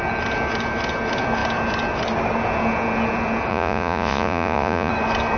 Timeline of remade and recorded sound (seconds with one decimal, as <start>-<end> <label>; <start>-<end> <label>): 0.0-3.5 recorded; 3.5-4.9 remade; 4.9-5.4 recorded